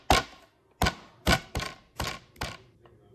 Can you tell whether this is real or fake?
real